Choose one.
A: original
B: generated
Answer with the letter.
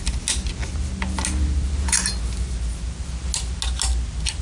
A